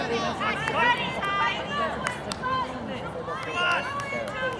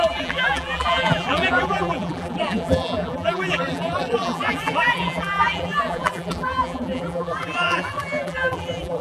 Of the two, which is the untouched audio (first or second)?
first